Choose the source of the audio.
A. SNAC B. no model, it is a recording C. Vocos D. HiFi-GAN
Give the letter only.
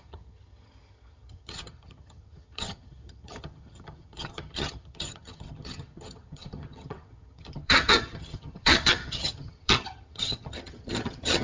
D